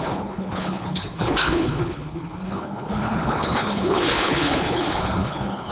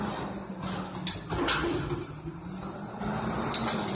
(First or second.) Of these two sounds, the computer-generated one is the first